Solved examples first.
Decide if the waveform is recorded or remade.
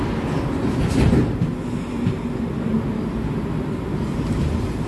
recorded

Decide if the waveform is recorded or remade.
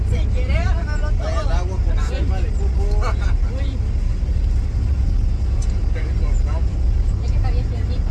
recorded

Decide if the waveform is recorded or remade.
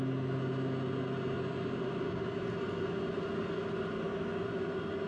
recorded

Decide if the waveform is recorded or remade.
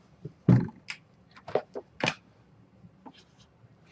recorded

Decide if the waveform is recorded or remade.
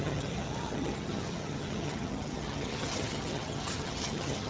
remade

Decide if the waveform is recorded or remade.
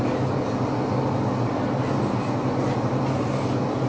recorded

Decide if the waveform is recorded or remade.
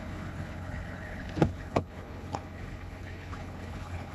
remade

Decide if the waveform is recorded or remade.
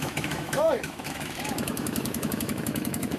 remade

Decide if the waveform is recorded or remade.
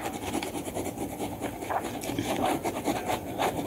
recorded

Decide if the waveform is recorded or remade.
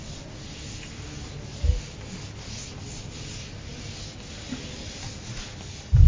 recorded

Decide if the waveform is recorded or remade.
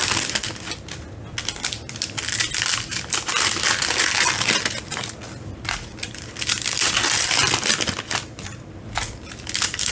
recorded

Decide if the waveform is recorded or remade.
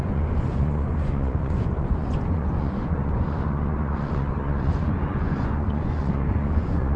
remade